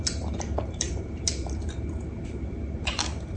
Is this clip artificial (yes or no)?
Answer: yes